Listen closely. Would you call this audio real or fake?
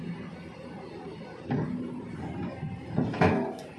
real